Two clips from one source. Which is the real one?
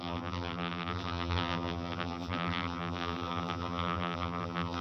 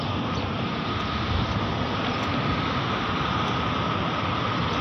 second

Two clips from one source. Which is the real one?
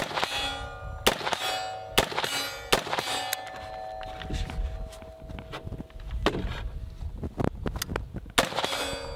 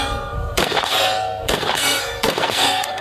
first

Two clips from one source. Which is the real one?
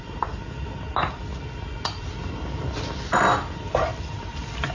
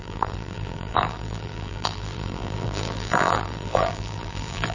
first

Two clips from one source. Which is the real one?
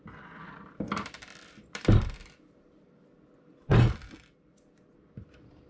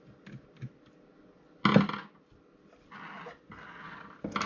second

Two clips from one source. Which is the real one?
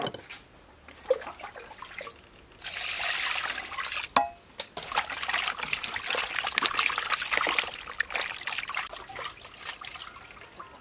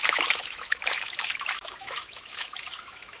first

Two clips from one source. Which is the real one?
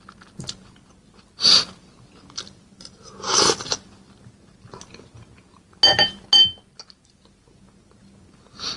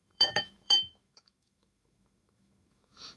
first